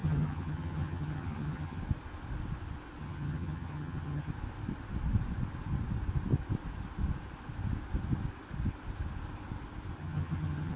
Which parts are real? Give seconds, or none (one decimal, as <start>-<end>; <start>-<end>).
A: 1.8-3.0; 4.3-10.0